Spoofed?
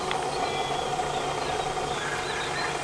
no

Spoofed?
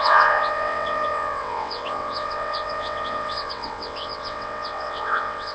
yes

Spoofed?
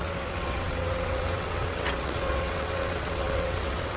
yes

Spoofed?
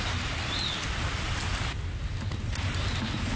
no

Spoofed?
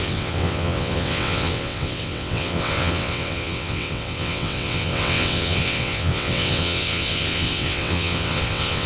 yes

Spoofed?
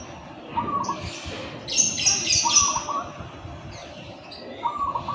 no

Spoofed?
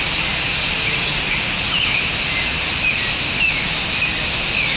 no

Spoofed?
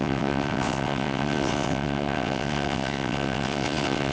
yes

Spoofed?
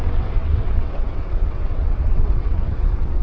yes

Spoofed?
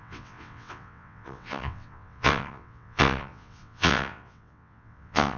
yes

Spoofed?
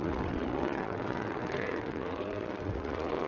yes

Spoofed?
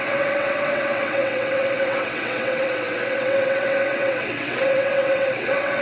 yes